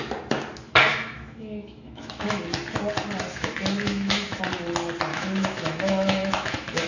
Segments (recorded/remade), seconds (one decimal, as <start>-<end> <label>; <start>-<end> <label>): 0.0-0.9 recorded; 0.9-2.4 remade; 2.4-3.3 recorded; 3.3-4.4 remade; 4.4-5.1 recorded; 5.1-6.9 remade